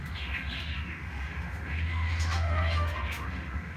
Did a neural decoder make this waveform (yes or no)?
yes